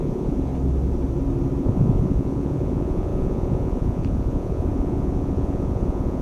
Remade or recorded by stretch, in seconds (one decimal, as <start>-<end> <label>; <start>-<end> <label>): 0.0-0.5 remade; 0.5-1.6 recorded; 1.6-6.2 remade